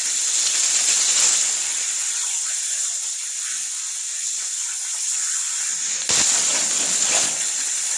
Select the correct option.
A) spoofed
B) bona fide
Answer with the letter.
B